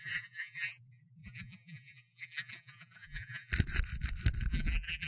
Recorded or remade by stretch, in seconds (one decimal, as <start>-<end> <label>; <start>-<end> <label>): 0.0-3.5 remade; 3.5-4.5 recorded; 4.5-5.1 remade